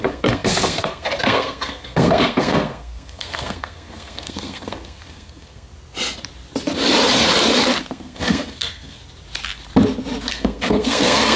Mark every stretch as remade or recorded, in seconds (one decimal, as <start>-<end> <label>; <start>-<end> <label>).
0.0-5.7 remade; 5.7-7.8 recorded; 7.8-9.0 remade; 9.0-10.3 recorded; 10.3-11.4 remade